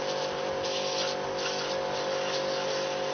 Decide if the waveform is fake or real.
real